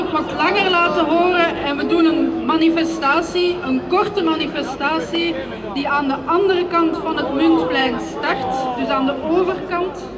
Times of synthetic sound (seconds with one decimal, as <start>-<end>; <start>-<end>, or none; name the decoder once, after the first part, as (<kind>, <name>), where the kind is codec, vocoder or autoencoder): 1.6-5.9 (autoencoder, DAC-VAE); 7.8-8.4